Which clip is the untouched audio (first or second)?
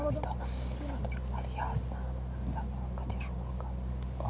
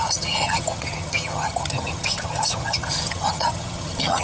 first